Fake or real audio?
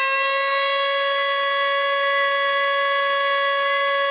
real